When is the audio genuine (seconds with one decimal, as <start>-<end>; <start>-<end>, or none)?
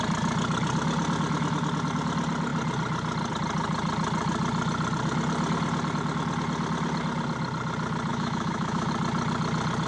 0.0-8.1; 8.9-9.9